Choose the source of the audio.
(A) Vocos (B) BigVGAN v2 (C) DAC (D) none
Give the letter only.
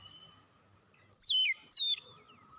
D